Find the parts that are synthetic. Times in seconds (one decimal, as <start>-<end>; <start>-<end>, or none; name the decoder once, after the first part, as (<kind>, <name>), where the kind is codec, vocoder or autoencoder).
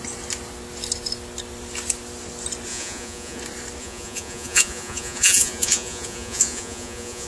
2.7-3.4 (vocoder, Vocos); 3.8-7.3